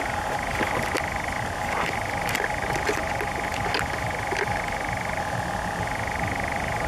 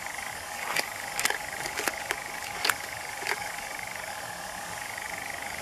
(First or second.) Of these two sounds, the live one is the first